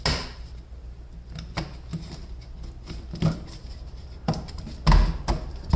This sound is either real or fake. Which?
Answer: real